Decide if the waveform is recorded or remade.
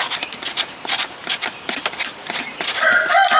recorded